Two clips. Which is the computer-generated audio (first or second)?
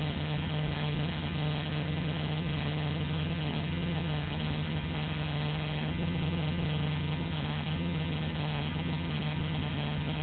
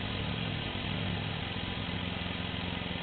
first